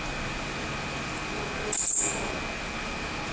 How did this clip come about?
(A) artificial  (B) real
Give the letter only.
B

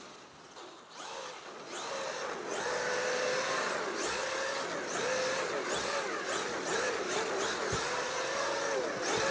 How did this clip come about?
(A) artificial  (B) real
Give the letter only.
B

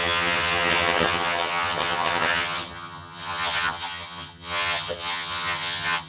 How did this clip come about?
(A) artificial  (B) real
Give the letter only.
A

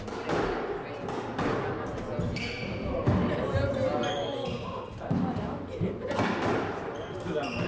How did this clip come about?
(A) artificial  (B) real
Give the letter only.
B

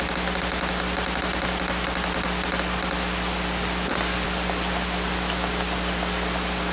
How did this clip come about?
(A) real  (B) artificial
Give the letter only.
A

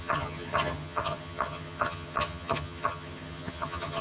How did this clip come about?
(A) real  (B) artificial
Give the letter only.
B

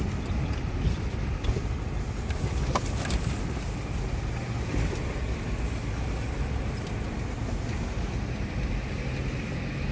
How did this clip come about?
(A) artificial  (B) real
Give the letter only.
B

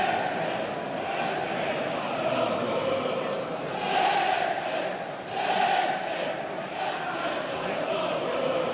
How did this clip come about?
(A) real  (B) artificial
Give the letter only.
A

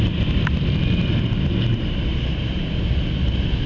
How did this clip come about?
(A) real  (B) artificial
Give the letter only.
A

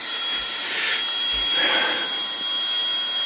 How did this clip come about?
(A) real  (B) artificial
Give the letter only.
A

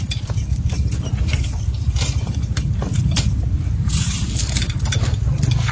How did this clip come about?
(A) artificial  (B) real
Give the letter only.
B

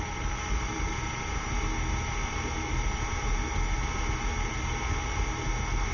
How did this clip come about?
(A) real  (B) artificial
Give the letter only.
A